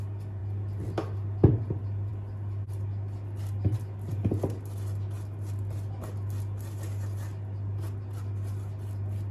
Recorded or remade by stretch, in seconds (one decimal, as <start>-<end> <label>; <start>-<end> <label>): 0.0-9.3 recorded